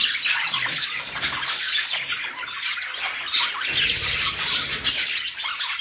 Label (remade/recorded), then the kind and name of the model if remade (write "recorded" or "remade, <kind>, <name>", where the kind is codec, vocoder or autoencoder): recorded